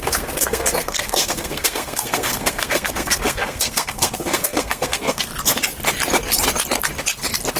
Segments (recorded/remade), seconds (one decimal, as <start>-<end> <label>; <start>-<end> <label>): 0.0-5.3 remade; 5.3-7.6 recorded